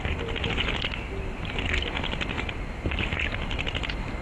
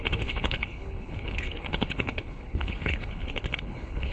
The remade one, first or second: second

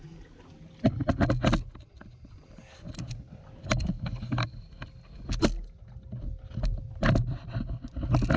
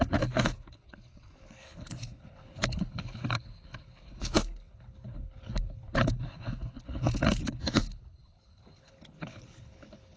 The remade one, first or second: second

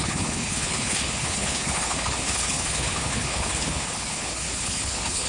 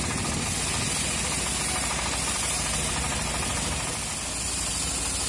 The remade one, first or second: first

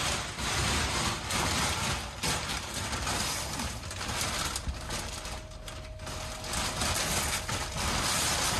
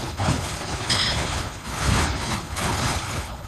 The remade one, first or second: second